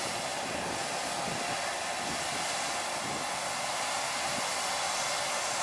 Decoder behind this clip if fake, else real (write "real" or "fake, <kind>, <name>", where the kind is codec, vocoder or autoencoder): real